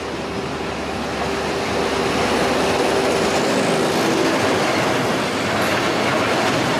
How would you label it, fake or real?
real